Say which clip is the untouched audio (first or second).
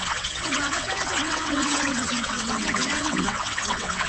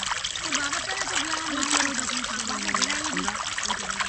second